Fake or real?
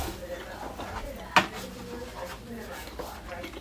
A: real